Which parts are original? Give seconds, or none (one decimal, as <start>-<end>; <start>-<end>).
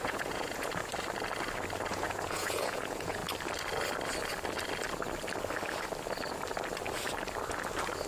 0.9-1.9; 3.2-8.1